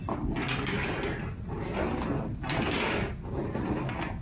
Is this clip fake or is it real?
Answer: real